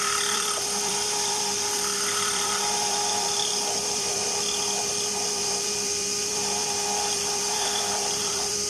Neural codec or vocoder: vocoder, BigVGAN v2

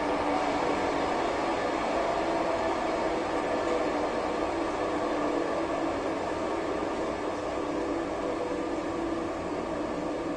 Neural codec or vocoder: none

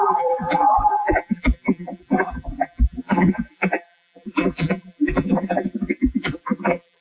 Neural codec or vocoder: vocoder, BigVGAN v2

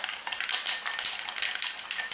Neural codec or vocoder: none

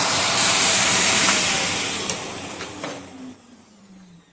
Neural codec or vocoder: vocoder, BigVGAN v2